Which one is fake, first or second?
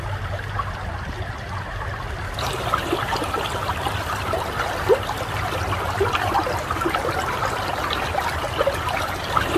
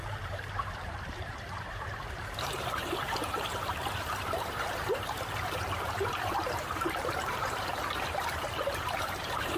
second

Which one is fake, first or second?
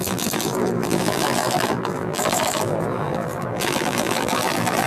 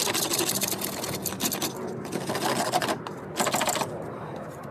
first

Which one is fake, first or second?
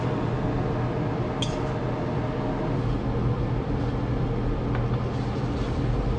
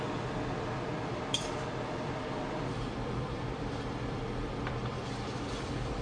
second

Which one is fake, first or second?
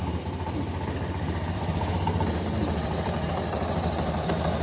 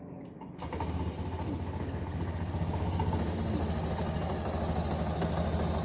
first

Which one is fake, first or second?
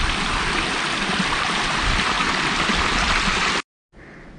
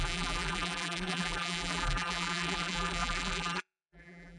second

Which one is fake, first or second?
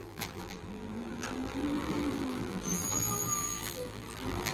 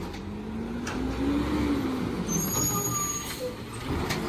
first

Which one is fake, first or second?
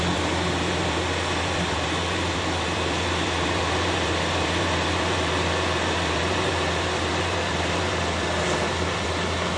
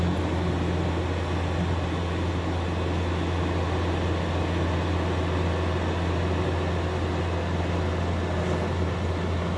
first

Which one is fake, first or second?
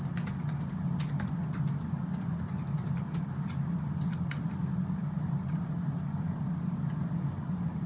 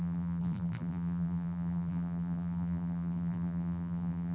second